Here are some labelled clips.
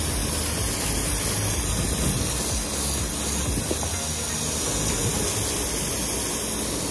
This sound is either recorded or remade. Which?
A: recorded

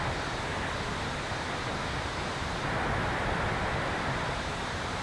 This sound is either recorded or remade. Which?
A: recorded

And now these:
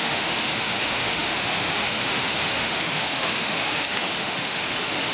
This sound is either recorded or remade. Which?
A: remade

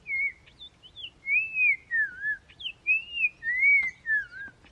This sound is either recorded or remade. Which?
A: recorded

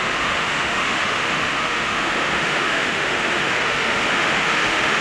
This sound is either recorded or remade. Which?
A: remade